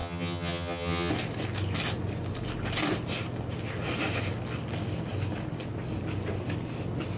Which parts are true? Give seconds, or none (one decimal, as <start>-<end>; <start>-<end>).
1.1-7.2